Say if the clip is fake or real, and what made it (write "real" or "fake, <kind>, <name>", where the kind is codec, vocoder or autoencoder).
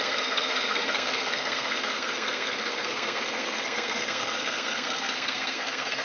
fake, codec, SNAC